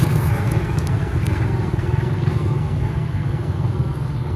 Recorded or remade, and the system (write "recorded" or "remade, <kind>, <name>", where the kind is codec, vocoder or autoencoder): remade, codec, SNAC